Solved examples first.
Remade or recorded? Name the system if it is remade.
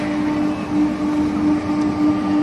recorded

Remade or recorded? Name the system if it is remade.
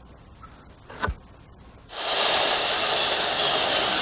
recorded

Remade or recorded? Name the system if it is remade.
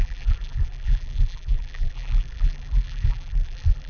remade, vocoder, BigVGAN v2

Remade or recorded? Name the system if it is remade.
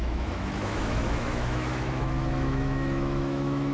remade, autoencoder, DAC-VAE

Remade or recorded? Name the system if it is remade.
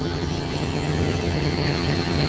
remade, vocoder, HiFi-GAN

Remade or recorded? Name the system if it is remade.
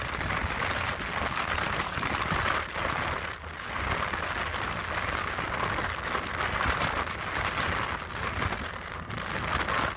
recorded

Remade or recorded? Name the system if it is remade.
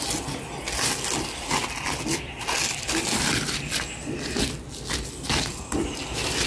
recorded